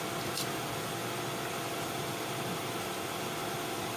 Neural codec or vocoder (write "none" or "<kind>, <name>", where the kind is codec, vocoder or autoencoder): none